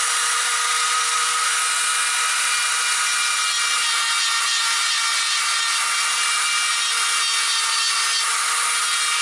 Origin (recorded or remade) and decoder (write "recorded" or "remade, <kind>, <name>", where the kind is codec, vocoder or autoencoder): recorded